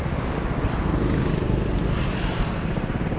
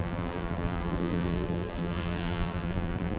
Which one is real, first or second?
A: first